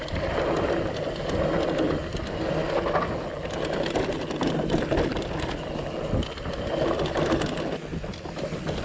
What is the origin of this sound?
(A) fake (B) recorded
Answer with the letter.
B